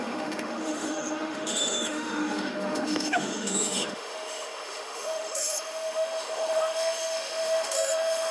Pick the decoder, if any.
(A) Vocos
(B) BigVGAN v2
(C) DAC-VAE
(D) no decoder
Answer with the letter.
C